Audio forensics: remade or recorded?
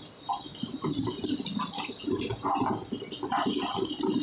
recorded